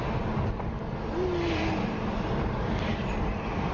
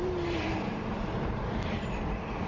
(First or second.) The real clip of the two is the first